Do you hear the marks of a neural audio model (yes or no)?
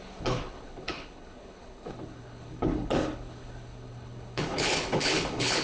yes